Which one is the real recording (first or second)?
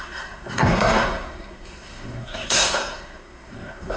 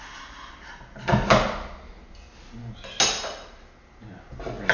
second